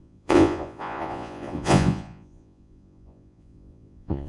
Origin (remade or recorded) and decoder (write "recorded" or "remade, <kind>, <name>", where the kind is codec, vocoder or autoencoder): remade, vocoder, Vocos